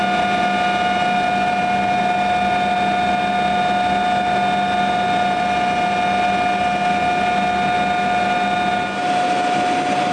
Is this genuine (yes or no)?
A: yes